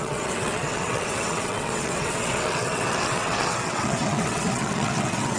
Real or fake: fake